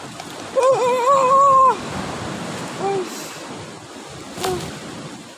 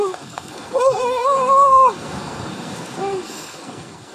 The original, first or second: first